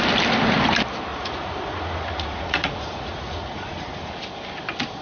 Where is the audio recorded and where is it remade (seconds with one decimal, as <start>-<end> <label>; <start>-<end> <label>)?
0.0-1.1 recorded; 1.1-4.1 remade; 4.1-5.0 recorded